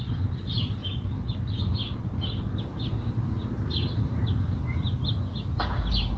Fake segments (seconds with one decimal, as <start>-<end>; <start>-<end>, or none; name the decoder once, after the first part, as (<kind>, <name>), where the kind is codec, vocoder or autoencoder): none